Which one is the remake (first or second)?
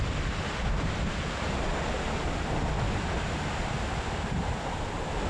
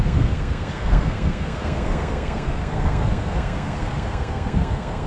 second